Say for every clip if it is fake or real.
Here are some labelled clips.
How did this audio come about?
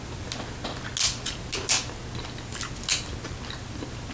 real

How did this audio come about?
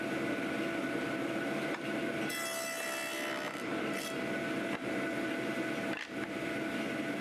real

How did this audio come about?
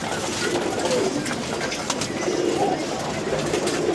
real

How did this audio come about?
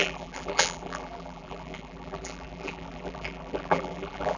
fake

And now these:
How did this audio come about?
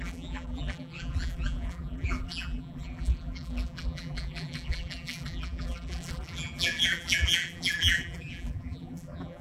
fake